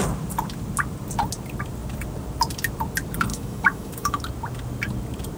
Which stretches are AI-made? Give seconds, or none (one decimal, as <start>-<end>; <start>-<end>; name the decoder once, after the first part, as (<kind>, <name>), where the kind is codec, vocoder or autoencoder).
3.3-4.2 (autoencoder, DAC-VAE)